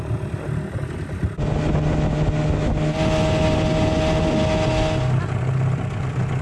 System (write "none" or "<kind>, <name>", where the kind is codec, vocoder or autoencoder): none